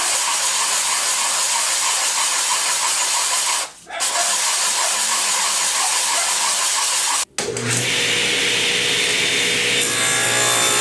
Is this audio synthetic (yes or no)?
no